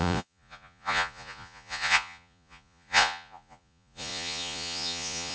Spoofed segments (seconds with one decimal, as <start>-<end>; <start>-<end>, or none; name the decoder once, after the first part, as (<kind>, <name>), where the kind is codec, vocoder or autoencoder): 0.0-5.3 (vocoder, Vocos)